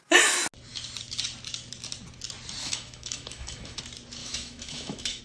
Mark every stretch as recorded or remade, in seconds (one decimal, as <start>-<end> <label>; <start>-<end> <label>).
0.0-2.6 recorded; 2.6-3.8 remade; 3.8-4.2 recorded; 4.2-5.2 remade